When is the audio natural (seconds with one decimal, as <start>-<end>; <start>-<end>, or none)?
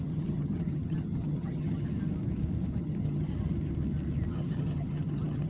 1.9-2.8; 3.3-4.3